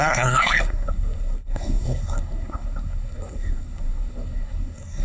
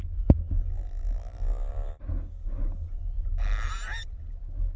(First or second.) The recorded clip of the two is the second